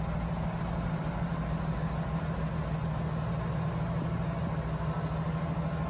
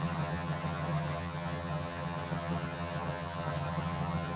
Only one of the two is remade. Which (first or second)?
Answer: second